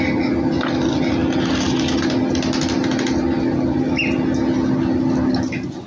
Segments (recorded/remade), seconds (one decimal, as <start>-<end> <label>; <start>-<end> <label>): 0.0-5.9 recorded